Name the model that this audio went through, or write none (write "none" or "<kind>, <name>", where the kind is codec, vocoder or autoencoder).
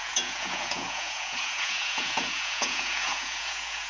vocoder, Vocos